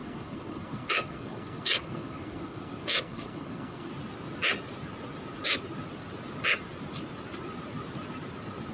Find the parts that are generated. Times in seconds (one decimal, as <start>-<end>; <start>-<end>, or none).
0.0-3.9